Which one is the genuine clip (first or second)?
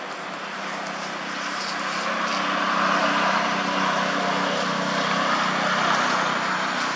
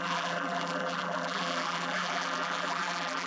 first